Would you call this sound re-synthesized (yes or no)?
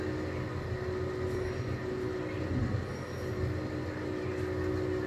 no